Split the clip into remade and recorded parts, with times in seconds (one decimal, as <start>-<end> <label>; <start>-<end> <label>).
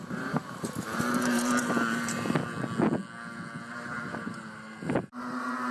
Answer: 0.0-2.4 remade; 2.4-3.7 recorded; 3.7-5.7 remade